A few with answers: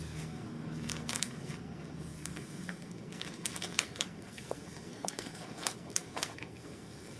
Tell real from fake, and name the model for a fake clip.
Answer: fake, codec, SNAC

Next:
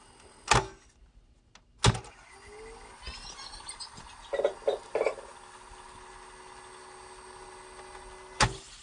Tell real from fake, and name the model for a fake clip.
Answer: real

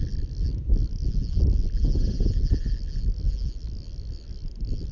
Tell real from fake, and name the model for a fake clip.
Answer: real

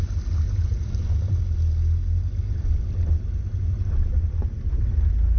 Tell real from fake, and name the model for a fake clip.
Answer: real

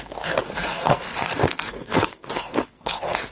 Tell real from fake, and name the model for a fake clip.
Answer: fake, codec, SNAC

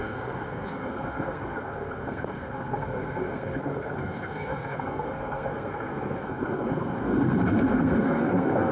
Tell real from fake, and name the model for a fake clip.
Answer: fake, codec, SNAC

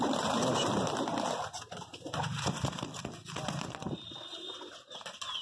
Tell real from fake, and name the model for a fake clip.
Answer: real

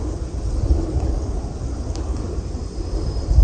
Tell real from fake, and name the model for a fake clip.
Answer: real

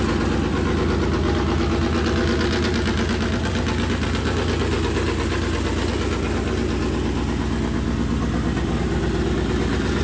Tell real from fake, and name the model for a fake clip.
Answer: real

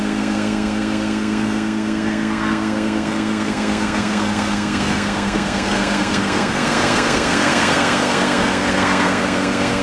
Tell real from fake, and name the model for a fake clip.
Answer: fake, codec, SNAC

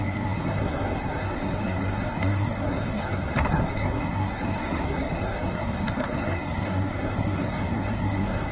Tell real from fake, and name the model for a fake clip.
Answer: fake, codec, SNAC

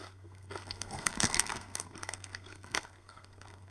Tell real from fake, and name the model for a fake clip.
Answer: fake, codec, SNAC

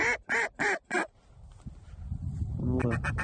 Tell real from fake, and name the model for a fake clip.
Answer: real